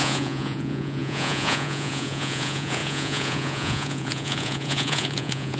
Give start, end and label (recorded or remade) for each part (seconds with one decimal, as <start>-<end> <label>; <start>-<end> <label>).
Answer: 0.0-5.6 remade